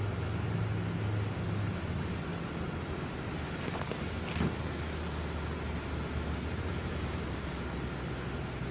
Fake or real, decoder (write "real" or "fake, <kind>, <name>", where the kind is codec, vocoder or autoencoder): real